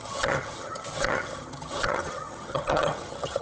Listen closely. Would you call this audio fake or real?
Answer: fake